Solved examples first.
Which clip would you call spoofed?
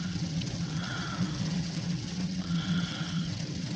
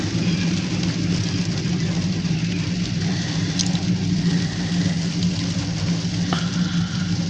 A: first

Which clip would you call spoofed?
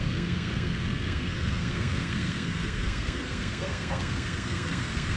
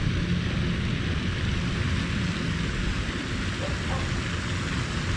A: first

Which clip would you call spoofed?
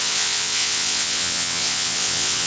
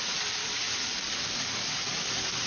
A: first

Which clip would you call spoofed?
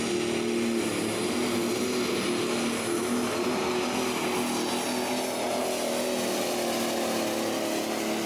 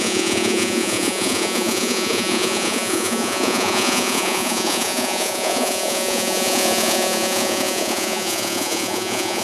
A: second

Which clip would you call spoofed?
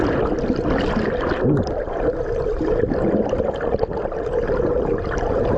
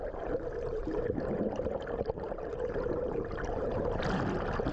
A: second